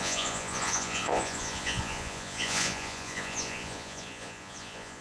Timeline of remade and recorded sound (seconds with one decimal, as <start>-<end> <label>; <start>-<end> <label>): 0.0-5.0 remade